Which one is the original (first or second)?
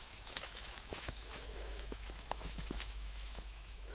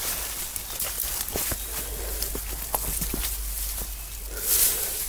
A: second